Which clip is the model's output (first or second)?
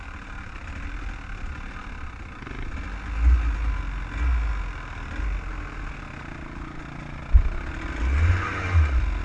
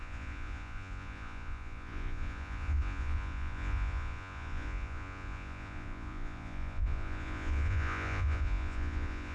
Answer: second